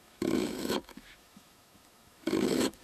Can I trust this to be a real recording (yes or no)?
no